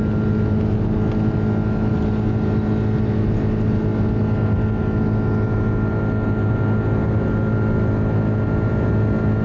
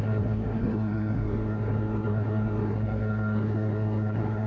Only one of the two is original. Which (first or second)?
first